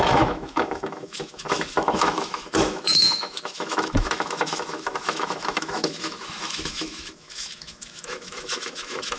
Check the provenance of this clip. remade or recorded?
remade